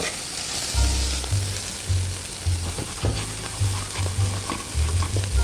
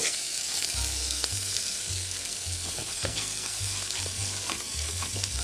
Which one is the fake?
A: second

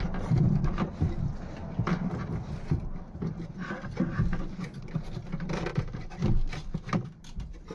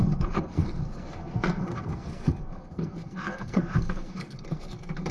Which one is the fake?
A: second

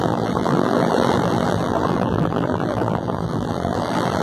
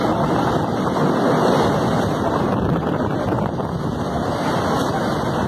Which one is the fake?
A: first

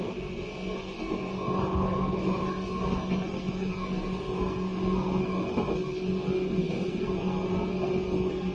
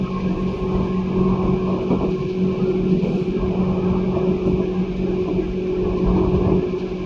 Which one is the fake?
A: first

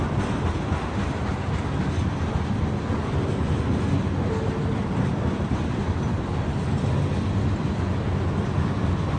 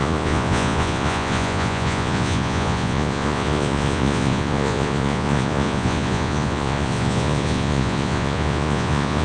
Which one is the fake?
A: second